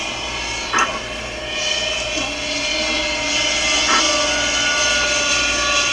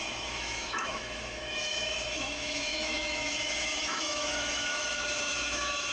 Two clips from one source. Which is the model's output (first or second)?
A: second